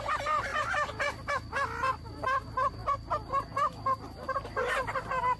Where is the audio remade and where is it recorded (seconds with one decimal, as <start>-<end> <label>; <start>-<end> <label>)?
0.0-0.5 recorded; 0.5-1.3 remade; 1.3-5.4 recorded